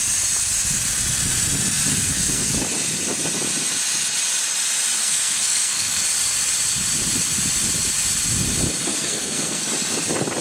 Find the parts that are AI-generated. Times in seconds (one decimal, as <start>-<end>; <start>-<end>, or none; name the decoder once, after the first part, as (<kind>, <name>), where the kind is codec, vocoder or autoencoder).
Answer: 1.9-2.5 (codec, SNAC); 5.0-6.0; 8.9-9.7